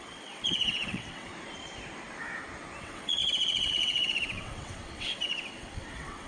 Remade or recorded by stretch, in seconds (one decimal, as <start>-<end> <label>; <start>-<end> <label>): 0.0-1.3 remade; 1.3-2.8 recorded; 2.8-6.3 remade